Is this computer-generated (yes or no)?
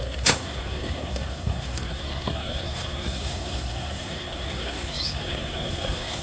yes